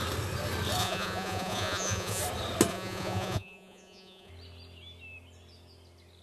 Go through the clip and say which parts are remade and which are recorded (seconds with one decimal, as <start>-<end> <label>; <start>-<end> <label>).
0.0-0.8 recorded; 0.8-2.2 remade; 2.2-2.7 recorded; 2.7-4.3 remade; 4.3-6.2 recorded